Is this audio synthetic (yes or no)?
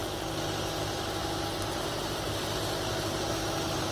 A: no